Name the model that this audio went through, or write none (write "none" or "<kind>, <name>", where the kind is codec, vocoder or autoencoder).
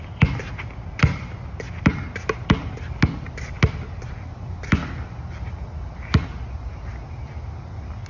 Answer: none